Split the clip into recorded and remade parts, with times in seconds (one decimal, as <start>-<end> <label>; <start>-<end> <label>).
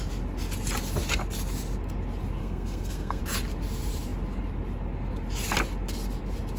0.0-2.4 recorded; 2.4-3.2 remade; 3.2-6.6 recorded